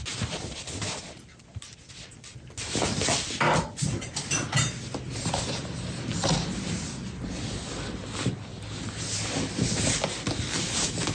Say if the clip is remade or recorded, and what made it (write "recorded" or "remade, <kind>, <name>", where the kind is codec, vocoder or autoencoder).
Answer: recorded